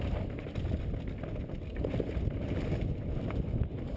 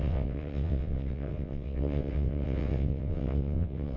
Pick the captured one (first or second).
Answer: first